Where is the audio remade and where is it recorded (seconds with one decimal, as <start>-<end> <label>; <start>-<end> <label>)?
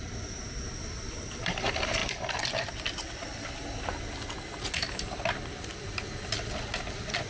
0.0-7.3 recorded